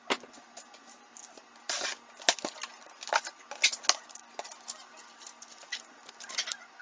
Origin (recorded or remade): recorded